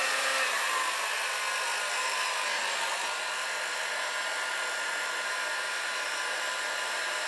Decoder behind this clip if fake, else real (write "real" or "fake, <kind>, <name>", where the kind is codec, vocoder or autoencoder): real